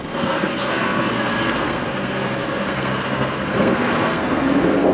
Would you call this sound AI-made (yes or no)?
yes